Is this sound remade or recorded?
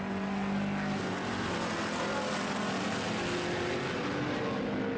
recorded